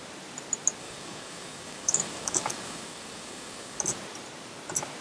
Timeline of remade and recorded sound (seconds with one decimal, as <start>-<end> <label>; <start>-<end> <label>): 0.0-0.8 recorded; 0.8-3.8 remade; 3.8-5.0 recorded